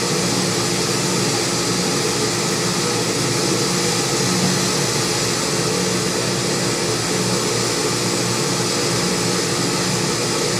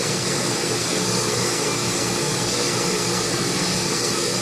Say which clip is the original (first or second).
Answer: first